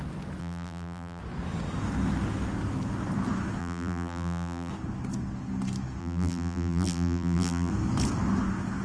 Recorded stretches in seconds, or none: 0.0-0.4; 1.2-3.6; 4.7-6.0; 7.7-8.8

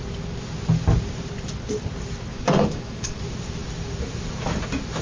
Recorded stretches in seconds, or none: 0.0-2.3; 3.2-5.0

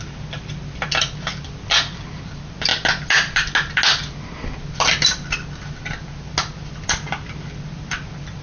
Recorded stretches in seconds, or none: 0.0-8.4